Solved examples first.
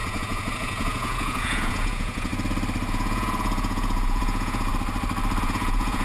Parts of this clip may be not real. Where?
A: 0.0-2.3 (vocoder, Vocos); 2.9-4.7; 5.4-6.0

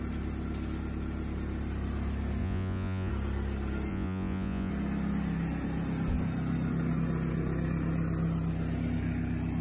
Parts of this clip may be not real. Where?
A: 2.4-3.1 (vocoder, Vocos); 3.9-4.7

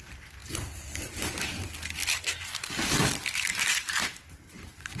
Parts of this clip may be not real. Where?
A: none

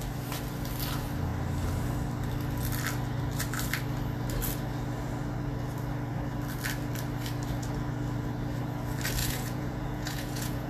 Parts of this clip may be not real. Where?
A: 9.2-10.7 (vocoder, Vocos)

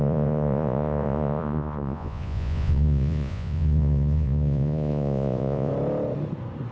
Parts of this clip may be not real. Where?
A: 0.0-5.7 (vocoder, Vocos)